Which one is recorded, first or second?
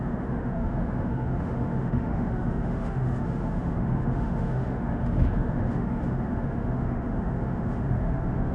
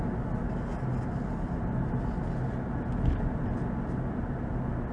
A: second